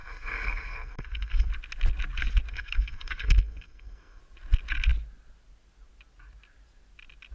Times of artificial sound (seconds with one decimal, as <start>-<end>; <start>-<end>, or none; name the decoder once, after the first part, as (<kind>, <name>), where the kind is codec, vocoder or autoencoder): 0.0-1.5 (codec, SNAC); 2.5-4.2